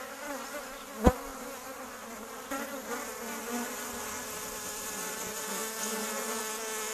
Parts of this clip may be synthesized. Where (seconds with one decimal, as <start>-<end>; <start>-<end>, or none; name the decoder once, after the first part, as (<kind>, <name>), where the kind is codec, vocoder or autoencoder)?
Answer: 1.3-5.4 (vocoder, BigVGAN v2)